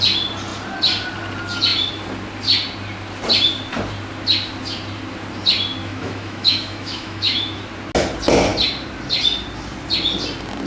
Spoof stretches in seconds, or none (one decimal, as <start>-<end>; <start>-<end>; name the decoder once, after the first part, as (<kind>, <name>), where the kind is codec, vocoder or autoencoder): 5.8-7.6 (autoencoder, DAC-VAE)